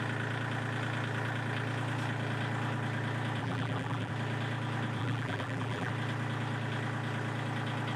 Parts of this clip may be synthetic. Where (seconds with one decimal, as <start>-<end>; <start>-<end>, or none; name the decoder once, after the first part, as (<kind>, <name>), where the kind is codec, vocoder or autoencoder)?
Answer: 3.4-4.1 (vocoder, BigVGAN v2); 5.0-5.9